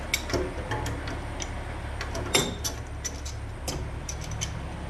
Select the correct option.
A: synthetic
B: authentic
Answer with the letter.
B